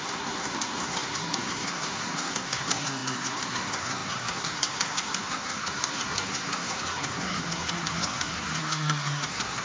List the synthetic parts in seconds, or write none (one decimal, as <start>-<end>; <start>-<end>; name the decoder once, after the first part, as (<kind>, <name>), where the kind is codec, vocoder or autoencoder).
0.0-9.6 (codec, SNAC)